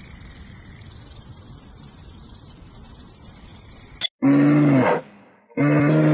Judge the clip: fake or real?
real